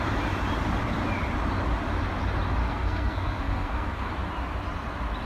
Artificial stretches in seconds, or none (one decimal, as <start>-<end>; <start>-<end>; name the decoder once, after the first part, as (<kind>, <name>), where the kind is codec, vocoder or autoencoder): 2.6-4.1 (codec, SNAC)